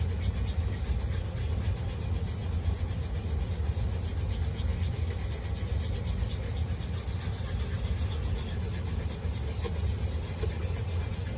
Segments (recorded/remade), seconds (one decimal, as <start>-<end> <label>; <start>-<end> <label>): 0.0-11.4 recorded